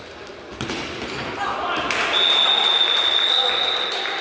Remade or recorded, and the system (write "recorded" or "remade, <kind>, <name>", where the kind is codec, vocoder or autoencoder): recorded